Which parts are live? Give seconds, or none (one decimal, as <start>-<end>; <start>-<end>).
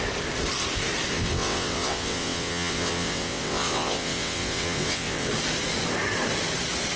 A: 0.0-1.1; 5.3-7.0